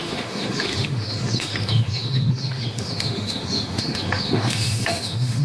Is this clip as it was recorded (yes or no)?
no